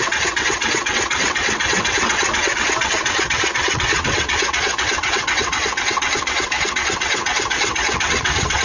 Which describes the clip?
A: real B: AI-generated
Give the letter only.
B